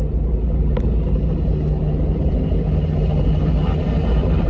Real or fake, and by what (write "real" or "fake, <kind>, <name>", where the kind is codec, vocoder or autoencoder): real